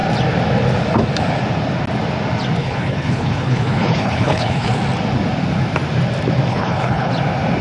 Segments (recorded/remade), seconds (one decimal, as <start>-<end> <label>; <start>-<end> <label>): 0.0-2.6 recorded; 2.6-4.8 remade; 4.8-6.5 recorded; 6.5-7.1 remade; 7.1-7.6 recorded